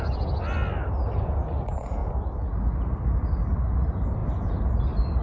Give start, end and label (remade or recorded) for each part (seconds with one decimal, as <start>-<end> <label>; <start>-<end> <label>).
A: 0.0-5.2 recorded